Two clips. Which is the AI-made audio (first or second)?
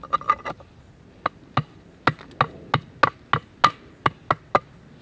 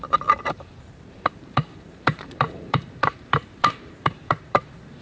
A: second